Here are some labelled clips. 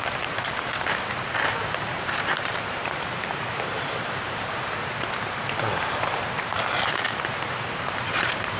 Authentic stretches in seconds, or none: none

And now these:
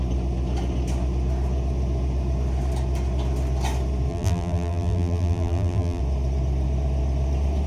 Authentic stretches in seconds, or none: 0.0-4.1; 6.0-7.7

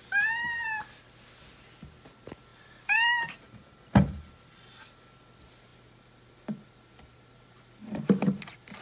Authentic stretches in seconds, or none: 0.0-8.8

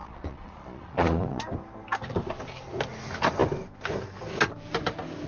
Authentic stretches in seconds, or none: 1.4-5.3

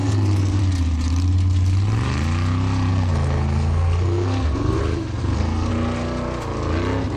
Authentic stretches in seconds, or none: 0.6-2.9; 4.8-5.2; 5.7-7.2

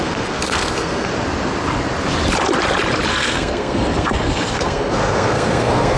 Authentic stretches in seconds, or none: 1.1-3.1

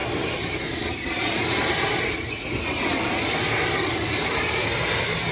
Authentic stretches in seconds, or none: none